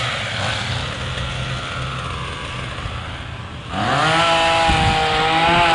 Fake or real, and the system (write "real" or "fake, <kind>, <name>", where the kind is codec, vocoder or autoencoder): real